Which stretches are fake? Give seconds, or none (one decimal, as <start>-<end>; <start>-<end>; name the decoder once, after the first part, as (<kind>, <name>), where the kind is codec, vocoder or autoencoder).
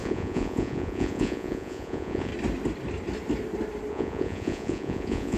0.0-2.3 (vocoder, Vocos); 3.9-5.4